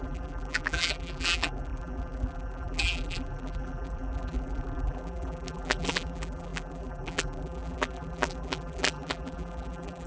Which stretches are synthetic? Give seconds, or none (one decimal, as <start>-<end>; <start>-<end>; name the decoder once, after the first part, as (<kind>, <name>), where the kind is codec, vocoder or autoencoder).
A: 0.0-10.1 (vocoder, BigVGAN v2)